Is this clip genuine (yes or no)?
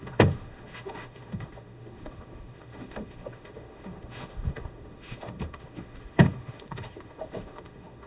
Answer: no